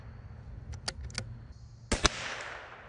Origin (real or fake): real